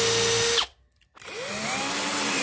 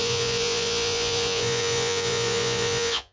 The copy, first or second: second